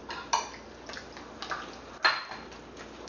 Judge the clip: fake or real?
real